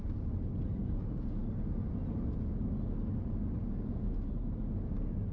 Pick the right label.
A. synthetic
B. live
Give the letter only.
B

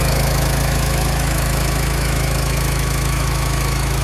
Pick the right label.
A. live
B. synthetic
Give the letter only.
B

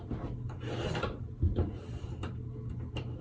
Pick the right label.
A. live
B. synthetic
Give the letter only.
A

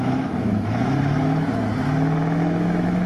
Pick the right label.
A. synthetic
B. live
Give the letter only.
A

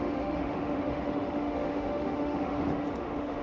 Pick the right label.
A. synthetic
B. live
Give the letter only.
A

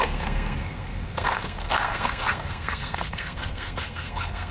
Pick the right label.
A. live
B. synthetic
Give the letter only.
B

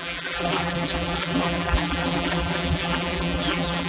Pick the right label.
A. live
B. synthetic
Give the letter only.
B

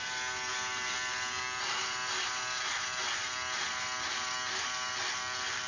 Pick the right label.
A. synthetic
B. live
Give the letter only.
B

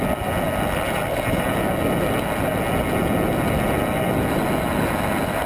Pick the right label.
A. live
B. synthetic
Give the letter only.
A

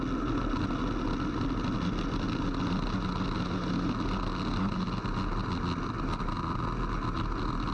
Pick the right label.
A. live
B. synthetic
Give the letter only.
A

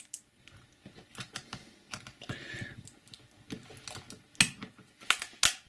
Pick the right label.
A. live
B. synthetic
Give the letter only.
A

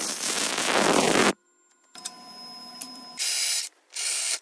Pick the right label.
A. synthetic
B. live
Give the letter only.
B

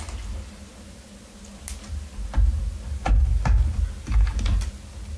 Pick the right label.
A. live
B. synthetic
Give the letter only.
A